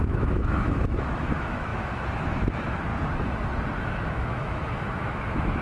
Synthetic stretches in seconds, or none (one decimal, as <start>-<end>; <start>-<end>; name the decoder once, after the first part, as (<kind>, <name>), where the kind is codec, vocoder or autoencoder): 0.0-2.9 (autoencoder, DAC-VAE); 3.8-5.6